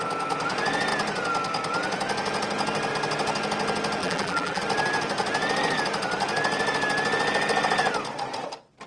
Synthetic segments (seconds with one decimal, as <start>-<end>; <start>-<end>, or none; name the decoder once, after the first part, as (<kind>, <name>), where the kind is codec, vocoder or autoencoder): 4.0-4.6 (vocoder, BigVGAN v2)